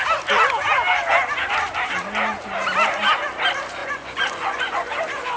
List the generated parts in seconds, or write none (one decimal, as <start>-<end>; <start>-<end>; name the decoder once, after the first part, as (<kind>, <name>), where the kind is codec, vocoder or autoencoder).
3.8-4.9 (vocoder, Vocos)